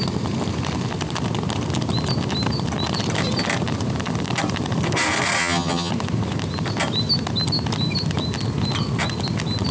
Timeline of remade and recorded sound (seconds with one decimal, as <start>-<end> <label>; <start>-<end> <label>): 0.0-5.4 recorded; 5.4-5.9 remade; 5.9-9.7 recorded